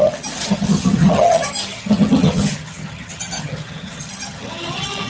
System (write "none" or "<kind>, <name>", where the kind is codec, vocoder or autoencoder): vocoder, HiFi-GAN